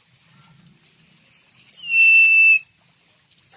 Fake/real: real